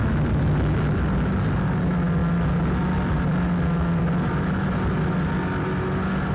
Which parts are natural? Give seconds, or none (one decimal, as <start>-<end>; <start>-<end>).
0.0-6.3